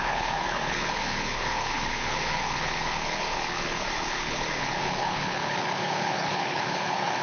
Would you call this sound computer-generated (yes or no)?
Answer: yes